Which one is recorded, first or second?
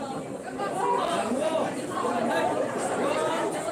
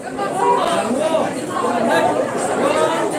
second